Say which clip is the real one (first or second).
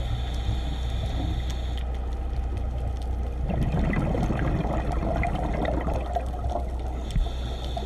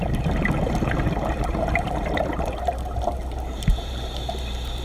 first